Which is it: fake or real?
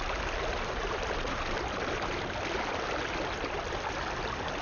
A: real